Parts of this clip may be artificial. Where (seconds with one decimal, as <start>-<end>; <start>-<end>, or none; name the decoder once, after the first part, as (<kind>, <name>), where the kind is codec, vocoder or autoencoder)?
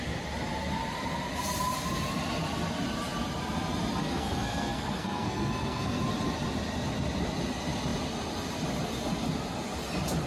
4.0-6.0 (codec, SNAC)